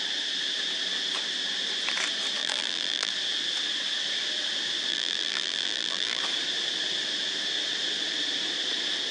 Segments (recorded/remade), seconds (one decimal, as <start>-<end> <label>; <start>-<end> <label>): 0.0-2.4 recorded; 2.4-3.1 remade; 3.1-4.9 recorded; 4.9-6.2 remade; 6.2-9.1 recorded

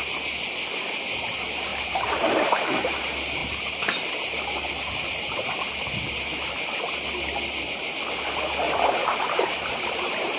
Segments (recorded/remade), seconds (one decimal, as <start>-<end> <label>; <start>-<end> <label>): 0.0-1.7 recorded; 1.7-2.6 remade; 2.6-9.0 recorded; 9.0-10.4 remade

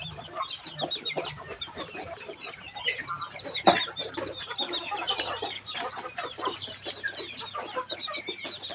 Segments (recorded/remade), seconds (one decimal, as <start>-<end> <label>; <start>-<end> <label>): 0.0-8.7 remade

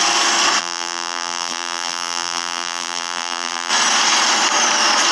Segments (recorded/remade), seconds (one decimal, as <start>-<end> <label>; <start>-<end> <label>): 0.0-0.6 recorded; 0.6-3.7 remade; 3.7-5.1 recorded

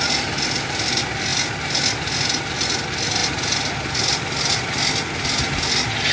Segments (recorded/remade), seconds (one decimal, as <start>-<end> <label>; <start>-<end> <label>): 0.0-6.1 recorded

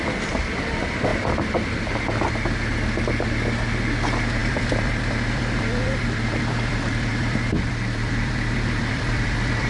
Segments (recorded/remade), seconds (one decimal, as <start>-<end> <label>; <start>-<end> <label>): 0.0-4.4 recorded; 4.4-9.7 remade

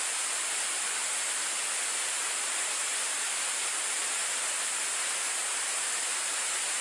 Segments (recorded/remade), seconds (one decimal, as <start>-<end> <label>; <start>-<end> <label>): 0.0-1.0 remade; 1.0-2.1 recorded; 2.1-4.2 remade; 4.2-5.2 recorded; 5.2-6.8 remade